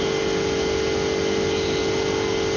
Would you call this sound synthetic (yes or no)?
no